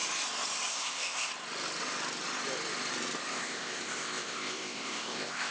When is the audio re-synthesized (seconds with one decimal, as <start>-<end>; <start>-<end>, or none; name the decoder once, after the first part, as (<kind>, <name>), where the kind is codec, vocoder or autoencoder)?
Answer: 0.7-1.3 (codec, ZipCodec); 3.3-5.5

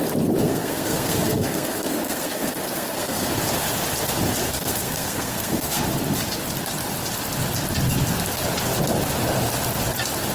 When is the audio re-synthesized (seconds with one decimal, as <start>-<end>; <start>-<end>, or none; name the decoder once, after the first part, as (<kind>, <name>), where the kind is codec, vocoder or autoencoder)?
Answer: 0.4-3.3 (codec, SNAC); 4.4-5.8

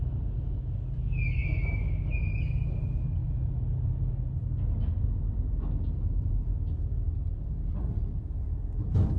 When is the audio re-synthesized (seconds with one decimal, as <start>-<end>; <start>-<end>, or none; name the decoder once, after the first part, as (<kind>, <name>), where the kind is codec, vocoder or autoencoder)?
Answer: none

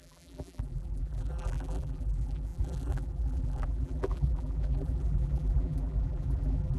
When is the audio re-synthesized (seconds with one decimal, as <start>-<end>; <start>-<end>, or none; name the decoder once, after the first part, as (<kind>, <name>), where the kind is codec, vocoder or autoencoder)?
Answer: 0.0-6.8 (vocoder, BigVGAN v2)